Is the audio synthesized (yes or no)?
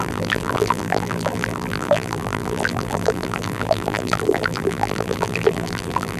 yes